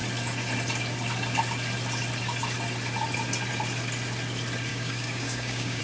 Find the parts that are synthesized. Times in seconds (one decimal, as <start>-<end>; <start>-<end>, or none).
4.7-5.8